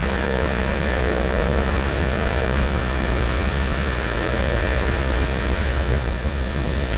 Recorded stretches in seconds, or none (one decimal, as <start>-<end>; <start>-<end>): none